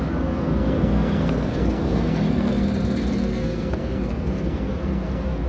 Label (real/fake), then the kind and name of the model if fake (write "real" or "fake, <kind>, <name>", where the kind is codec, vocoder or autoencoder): fake, codec, SNAC